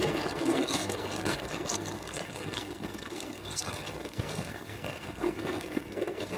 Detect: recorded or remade remade